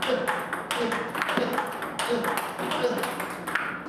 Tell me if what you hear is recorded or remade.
recorded